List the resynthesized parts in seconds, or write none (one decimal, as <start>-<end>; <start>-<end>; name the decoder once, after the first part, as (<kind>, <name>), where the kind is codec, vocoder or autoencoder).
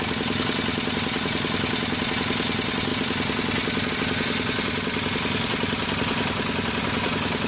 none